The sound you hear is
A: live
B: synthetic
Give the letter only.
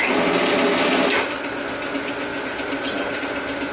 A